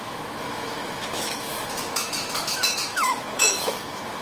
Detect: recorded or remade remade